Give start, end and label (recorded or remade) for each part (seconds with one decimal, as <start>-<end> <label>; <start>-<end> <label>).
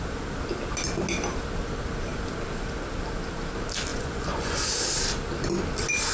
0.0-3.9 recorded; 3.9-4.7 remade; 4.7-6.1 recorded